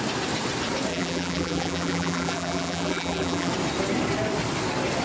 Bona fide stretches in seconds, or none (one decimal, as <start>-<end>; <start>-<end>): 0.0-0.9; 3.5-5.0